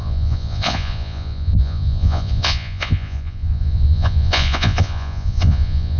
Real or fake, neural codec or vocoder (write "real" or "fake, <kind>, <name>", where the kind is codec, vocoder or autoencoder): fake, vocoder, Vocos